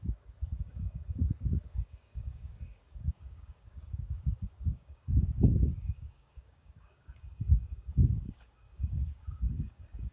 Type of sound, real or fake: fake